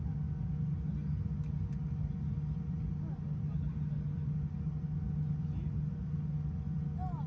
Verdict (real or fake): real